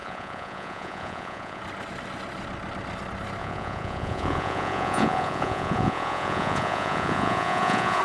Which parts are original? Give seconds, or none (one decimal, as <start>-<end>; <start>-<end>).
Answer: 1.6-3.4